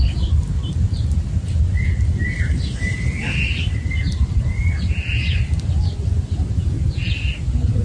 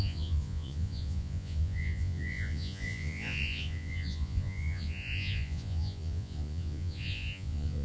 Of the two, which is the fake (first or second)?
second